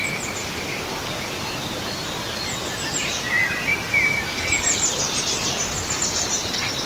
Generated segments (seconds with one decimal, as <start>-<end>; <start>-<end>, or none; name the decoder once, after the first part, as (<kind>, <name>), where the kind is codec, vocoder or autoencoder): none